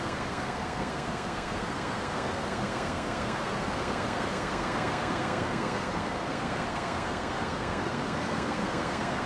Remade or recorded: remade